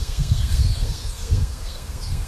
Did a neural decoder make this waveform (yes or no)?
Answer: yes